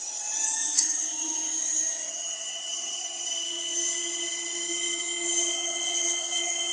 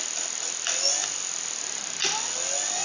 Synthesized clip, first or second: first